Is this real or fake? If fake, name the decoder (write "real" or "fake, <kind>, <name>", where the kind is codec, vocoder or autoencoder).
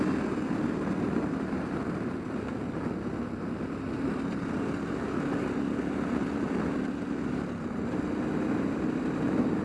real